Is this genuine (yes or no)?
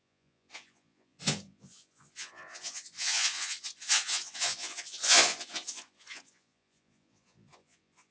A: no